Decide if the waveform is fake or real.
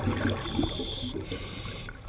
real